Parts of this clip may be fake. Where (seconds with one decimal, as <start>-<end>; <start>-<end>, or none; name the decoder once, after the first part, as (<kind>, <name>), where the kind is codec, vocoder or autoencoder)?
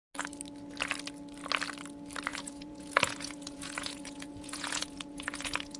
2.3-5.8 (vocoder, Vocos)